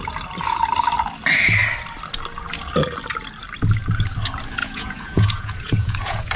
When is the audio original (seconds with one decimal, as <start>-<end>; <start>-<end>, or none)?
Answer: 0.0-4.6